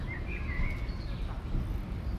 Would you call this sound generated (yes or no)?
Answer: no